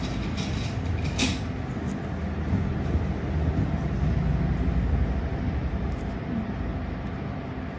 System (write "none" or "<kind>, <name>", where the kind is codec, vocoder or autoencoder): none